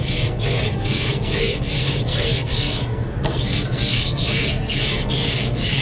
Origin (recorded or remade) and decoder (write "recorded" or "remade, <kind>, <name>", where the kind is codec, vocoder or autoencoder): remade, codec, SNAC